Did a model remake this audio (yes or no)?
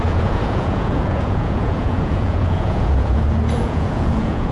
yes